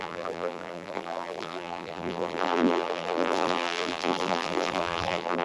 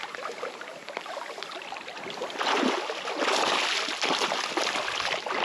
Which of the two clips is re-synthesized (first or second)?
first